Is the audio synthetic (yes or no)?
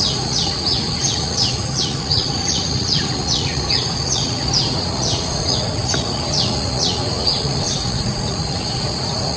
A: yes